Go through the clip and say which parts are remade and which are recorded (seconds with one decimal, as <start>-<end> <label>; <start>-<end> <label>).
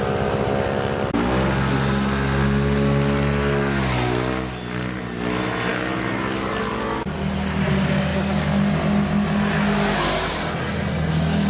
0.0-11.5 recorded